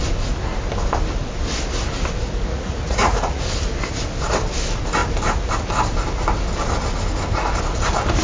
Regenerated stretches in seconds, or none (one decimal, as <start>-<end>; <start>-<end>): 2.5-3.4